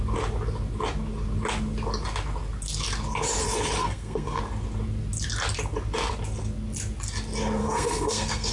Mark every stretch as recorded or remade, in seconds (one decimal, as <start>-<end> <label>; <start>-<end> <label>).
0.0-3.8 recorded; 3.8-4.4 remade; 4.4-7.6 recorded; 7.6-8.5 remade